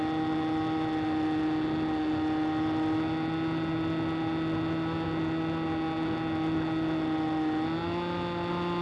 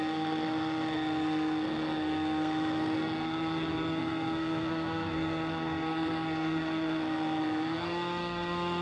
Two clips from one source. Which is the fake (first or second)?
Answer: second